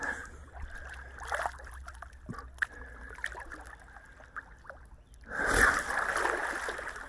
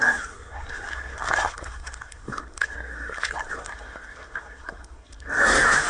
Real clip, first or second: first